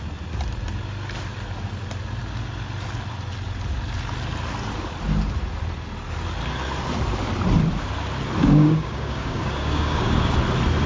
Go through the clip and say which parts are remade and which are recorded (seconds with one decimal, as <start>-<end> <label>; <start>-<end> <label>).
0.0-8.4 recorded; 8.4-10.3 remade; 10.3-10.9 recorded